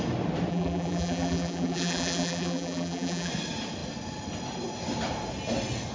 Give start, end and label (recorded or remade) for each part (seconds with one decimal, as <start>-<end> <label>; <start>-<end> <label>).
0.0-0.5 recorded; 0.5-3.3 remade; 3.3-5.9 recorded